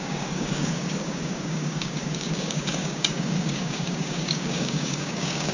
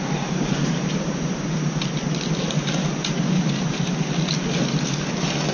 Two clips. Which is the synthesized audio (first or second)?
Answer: first